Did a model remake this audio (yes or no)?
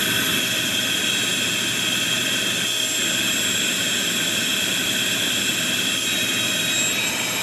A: no